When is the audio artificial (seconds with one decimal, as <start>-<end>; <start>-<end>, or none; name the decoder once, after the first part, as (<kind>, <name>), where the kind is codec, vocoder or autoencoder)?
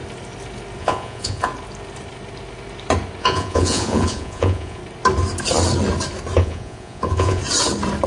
0.8-1.5 (vocoder, Vocos); 3.2-4.8; 6.4-7.4